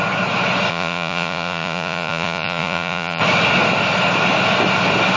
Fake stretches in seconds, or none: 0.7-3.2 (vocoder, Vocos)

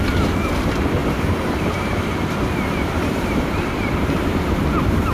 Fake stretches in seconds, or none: 1.0-4.1 (vocoder, BigVGAN v2)

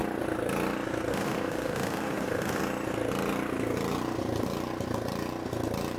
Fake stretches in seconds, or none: 1.1-2.6 (autoencoder, DAC-VAE)

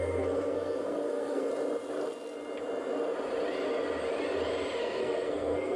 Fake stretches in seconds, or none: 0.0-1.5 (codec, SNAC); 4.8-5.8

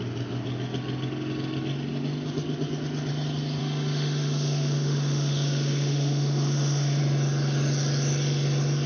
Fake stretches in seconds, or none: 3.6-7.0 (autoencoder, DAC-VAE)

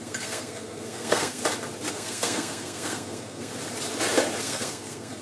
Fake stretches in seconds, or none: 0.0-1.4 (codec, SNAC); 1.9-3.5; 4.4-5.2

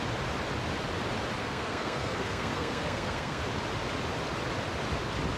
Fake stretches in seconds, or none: 1.4-3.4 (codec, SNAC)